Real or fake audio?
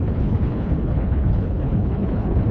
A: fake